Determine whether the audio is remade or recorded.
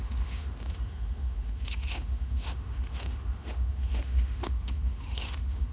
remade